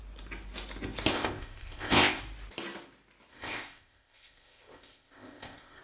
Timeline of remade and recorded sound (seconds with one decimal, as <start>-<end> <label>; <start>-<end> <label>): 0.0-1.1 recorded; 1.1-2.2 remade; 2.2-3.3 recorded; 3.3-5.8 remade